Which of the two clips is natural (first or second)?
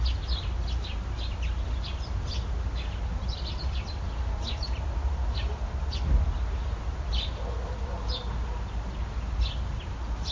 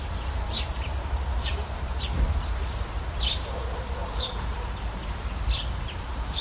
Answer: first